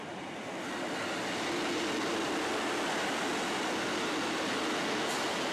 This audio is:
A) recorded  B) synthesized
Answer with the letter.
A